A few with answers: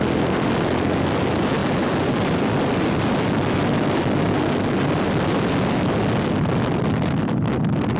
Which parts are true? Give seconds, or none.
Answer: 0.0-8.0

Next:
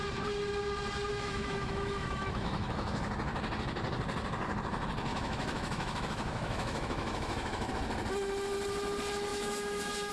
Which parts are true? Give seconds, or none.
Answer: 0.0-1.1; 3.1-5.1; 7.7-9.3

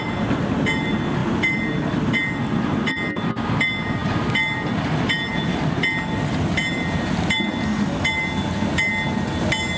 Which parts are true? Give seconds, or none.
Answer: 0.0-9.8

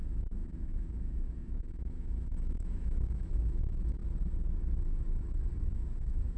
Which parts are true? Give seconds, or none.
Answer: 4.0-5.7

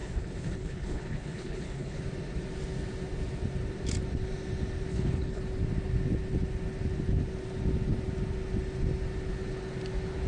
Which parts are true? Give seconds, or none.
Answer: 2.0-4.9; 5.4-10.3

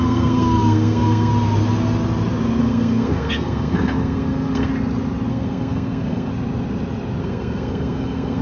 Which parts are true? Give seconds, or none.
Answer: 1.3-2.6; 4.7-5.3; 6.3-7.2

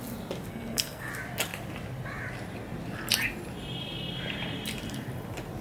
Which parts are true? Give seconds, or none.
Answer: 0.0-0.5; 1.1-5.6